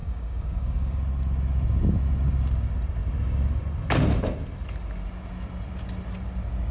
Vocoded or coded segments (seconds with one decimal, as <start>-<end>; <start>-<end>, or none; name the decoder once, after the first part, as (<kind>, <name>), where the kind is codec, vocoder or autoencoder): 0.0-1.0 (codec, DAC)